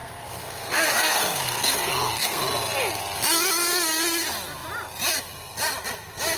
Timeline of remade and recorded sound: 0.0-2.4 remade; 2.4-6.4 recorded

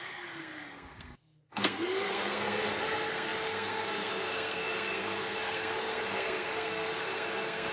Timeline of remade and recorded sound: 0.0-7.7 remade